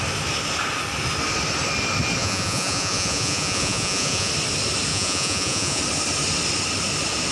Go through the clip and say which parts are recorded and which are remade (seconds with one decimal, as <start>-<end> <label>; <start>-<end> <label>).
0.0-2.2 recorded; 2.2-4.3 remade; 4.3-4.9 recorded; 4.9-5.8 remade; 5.8-7.3 recorded